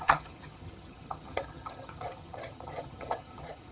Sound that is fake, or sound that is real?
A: fake